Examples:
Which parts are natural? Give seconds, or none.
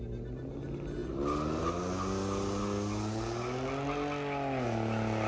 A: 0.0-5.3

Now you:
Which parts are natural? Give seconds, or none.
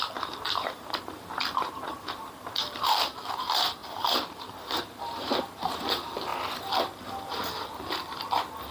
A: 6.3-8.7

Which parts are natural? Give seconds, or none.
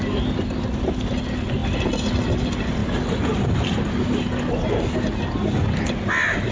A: 0.0-6.5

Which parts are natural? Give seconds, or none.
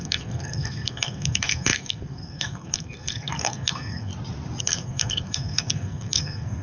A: 4.1-4.6